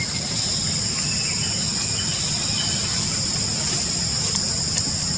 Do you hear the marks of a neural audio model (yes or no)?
no